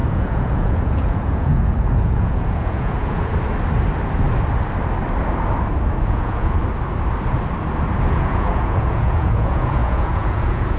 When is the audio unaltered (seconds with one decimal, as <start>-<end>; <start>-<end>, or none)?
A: 3.3-6.0; 6.6-8.1